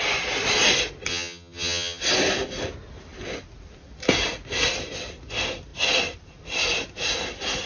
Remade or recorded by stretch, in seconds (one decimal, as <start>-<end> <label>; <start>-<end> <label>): 0.0-1.1 recorded; 1.1-2.0 remade; 2.0-7.7 recorded